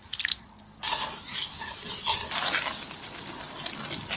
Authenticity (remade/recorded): remade